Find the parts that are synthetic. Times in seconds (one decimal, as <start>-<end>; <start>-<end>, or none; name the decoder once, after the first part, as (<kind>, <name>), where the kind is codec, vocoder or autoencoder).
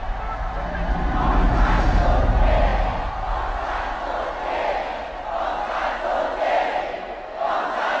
6.8-7.5 (codec, SNAC)